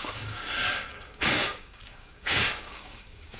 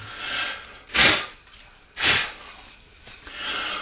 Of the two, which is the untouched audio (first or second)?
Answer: second